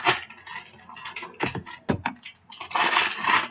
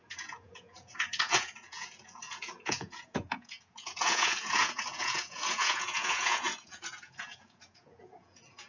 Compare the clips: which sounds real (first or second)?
first